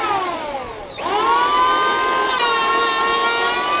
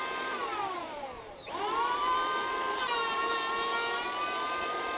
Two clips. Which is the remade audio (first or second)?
second